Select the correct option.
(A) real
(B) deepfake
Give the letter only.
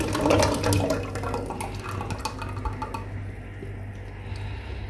A